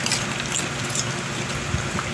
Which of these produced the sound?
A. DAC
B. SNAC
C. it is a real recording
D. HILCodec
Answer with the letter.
C